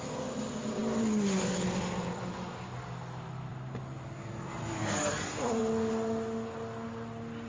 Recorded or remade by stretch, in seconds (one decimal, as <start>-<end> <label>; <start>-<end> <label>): 0.0-7.5 recorded